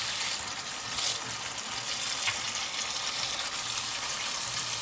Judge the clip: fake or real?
real